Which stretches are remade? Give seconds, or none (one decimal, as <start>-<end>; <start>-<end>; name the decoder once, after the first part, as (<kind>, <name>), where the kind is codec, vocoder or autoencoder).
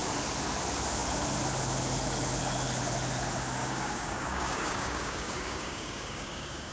3.6-6.7 (codec, DAC)